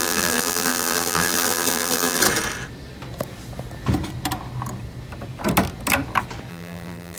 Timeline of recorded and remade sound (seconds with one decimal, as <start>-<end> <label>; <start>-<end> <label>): 0.0-2.2 remade; 2.2-6.5 recorded; 6.5-7.2 remade